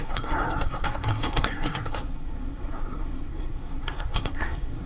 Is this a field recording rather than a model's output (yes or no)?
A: no